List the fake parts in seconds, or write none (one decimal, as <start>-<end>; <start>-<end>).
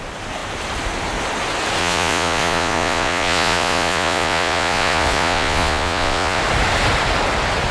1.8-6.4